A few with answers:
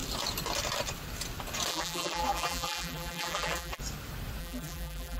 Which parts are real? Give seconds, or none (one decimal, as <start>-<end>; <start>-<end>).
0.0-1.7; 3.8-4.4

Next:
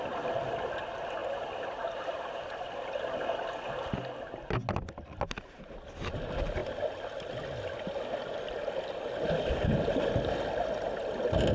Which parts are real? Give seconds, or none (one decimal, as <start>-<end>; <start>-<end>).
0.0-11.5

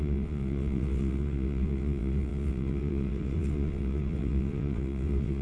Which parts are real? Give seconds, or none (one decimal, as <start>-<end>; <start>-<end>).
none